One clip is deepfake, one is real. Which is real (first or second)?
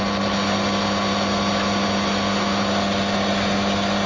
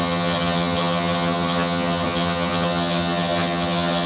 first